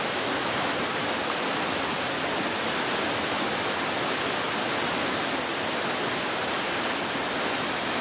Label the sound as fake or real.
real